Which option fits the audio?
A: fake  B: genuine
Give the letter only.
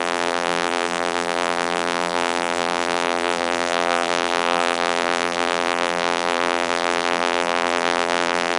A